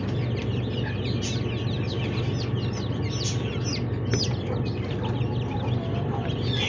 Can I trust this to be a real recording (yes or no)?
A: yes